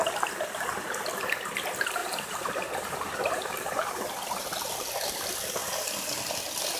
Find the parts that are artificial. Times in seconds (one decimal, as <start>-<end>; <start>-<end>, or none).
2.0-4.0